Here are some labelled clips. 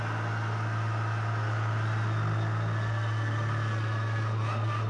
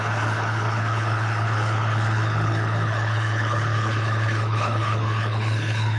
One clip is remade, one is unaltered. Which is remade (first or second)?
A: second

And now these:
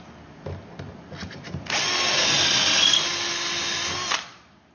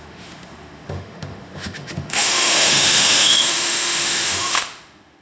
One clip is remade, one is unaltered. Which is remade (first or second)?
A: second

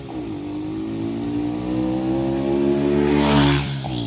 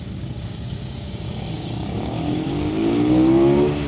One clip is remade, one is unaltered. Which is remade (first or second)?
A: second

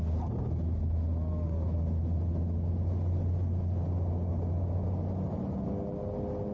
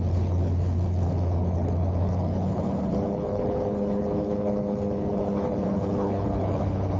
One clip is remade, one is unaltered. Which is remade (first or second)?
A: second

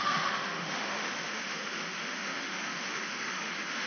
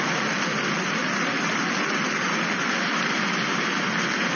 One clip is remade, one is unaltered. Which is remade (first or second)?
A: first